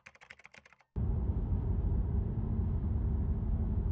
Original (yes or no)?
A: yes